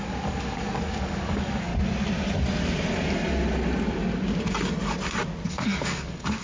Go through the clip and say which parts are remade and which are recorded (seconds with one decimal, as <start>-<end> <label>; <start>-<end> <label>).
0.0-1.7 remade; 1.7-5.5 recorded; 5.5-6.4 remade